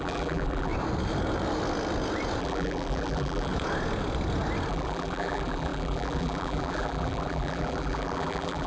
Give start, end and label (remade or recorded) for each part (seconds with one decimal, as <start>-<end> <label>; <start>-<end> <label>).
0.0-0.7 remade; 0.7-2.4 recorded; 2.4-3.5 remade; 3.5-4.7 recorded; 4.7-8.7 remade